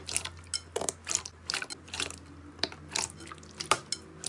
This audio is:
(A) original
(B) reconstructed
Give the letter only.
A